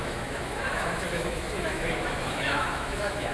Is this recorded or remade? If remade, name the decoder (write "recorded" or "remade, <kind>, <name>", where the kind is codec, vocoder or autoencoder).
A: remade, autoencoder, DAC-VAE